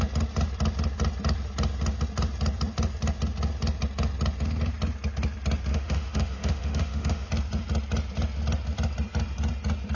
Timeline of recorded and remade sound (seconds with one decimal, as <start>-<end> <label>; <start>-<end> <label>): 0.0-5.7 recorded; 5.7-7.3 remade; 7.3-10.0 recorded